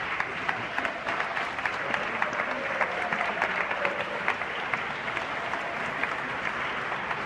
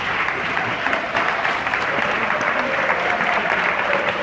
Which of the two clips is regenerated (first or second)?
second